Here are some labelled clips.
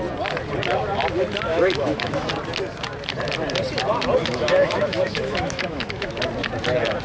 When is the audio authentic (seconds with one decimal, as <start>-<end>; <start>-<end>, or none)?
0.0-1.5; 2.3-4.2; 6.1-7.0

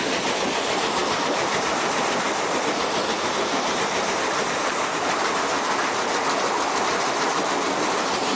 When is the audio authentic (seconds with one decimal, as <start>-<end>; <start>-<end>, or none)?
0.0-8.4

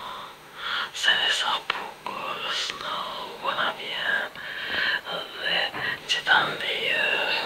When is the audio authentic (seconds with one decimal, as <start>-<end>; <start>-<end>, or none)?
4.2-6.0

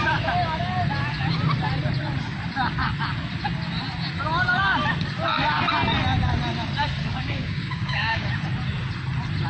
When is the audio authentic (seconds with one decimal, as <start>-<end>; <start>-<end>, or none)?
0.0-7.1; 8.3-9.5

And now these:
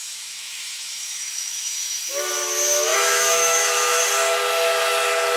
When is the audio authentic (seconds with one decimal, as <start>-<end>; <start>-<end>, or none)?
2.3-2.9; 4.0-5.4

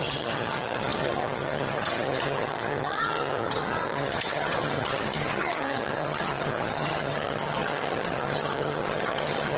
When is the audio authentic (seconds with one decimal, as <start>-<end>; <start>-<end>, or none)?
none